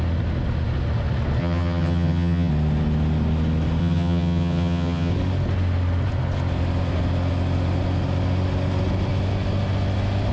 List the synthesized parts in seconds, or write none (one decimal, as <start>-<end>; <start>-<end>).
1.4-2.5; 3.8-5.1

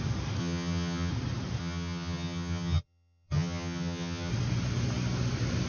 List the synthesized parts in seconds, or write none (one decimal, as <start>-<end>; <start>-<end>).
0.4-1.1; 1.6-4.3

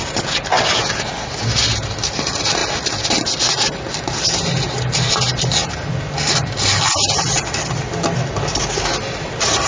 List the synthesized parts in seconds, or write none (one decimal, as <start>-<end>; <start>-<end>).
none

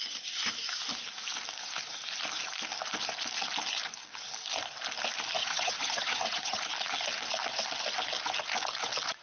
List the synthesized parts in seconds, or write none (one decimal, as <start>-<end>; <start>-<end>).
5.4-6.6

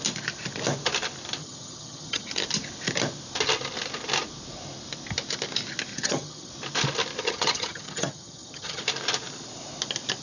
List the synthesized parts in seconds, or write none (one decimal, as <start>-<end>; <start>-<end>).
1.4-2.3; 5.9-6.5; 7.2-8.8